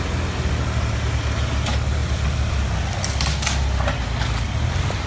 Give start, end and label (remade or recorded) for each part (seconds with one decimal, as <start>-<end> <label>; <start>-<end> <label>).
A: 0.0-2.0 recorded; 2.0-2.8 remade; 2.8-5.1 recorded